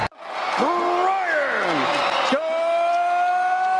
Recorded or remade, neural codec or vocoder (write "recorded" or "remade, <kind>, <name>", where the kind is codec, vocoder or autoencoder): recorded